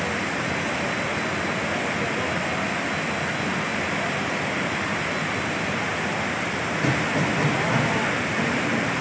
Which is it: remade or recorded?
recorded